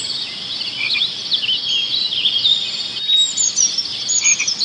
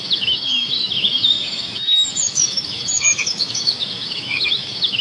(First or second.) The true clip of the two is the first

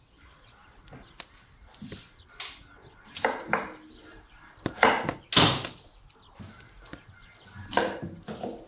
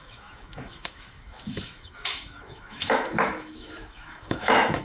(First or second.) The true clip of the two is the first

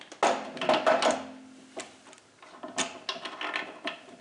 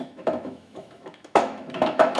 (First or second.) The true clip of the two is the first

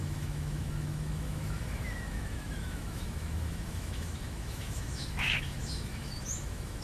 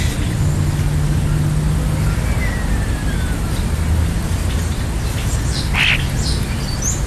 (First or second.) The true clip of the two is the second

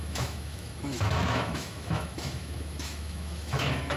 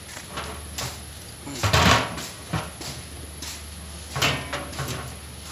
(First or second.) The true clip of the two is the second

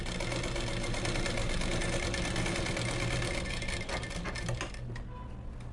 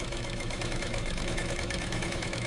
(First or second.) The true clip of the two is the first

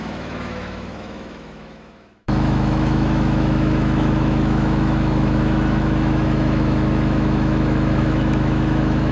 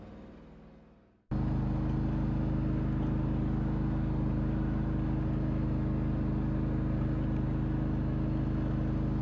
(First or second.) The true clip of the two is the second